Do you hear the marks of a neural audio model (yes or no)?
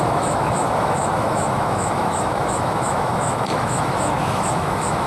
yes